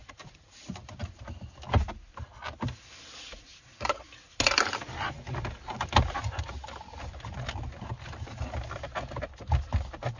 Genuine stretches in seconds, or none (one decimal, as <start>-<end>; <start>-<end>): 1.2-10.2